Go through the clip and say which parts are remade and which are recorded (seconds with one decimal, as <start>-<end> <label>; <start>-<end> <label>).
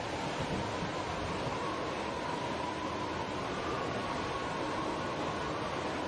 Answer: 0.0-6.1 recorded